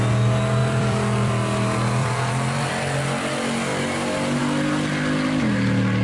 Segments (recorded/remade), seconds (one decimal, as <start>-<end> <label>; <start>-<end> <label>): 0.0-0.6 recorded; 0.6-1.3 remade; 1.3-2.0 recorded; 2.0-2.7 remade; 2.7-6.0 recorded